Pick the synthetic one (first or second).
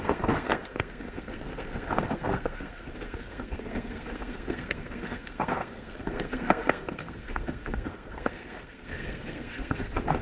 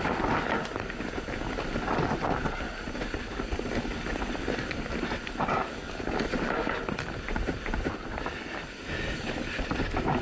first